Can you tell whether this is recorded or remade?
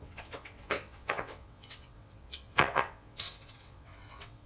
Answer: remade